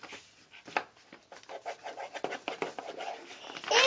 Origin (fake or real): real